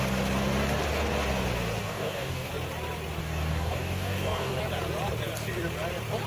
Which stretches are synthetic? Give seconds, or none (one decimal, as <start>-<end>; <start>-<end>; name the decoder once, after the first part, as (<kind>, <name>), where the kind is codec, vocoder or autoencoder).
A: 1.8-2.5 (codec, DAC); 3.2-4.6